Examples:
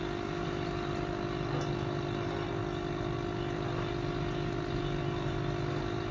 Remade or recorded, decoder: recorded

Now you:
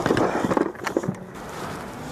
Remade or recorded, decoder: recorded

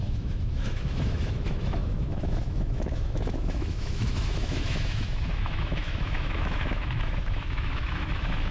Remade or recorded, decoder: remade, autoencoder, DAC-VAE